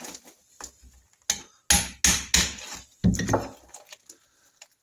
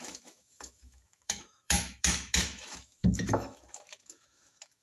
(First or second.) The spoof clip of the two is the second